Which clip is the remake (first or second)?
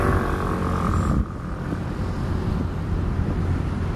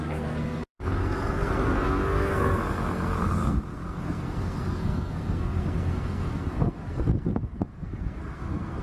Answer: second